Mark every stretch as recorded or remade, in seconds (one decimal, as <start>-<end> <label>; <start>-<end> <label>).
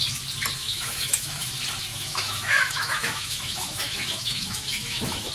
0.0-0.6 recorded; 0.6-1.5 remade; 1.5-1.9 recorded; 1.9-5.3 remade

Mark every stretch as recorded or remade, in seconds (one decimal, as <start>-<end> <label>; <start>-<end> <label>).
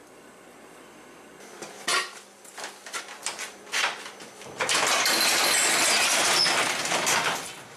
0.0-7.8 recorded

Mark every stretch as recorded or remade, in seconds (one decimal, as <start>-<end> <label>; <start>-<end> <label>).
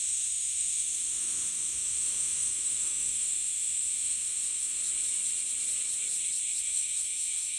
0.0-4.8 remade; 4.8-6.6 recorded; 6.6-7.6 remade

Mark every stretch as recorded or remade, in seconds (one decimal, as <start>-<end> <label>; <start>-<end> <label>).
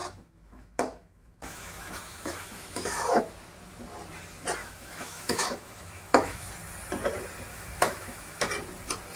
0.0-3.2 remade; 3.2-4.6 recorded; 4.6-6.5 remade; 6.5-7.5 recorded; 7.5-8.5 remade; 8.5-9.2 recorded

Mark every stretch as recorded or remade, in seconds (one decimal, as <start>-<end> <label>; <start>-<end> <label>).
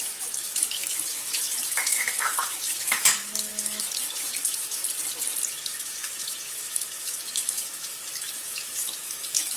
0.0-4.8 remade; 4.8-5.5 recorded; 5.5-9.6 remade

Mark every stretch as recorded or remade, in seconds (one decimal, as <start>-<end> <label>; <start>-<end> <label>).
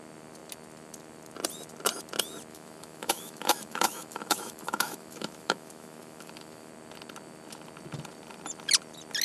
0.0-2.5 recorded; 2.5-6.7 remade; 6.7-9.2 recorded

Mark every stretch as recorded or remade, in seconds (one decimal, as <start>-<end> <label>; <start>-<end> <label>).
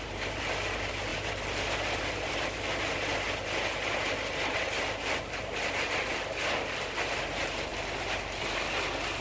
0.0-9.2 recorded